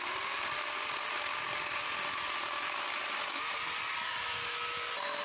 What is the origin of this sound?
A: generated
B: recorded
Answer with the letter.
B